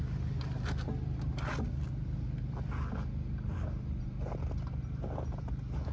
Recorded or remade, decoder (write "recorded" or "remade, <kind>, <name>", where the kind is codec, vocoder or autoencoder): recorded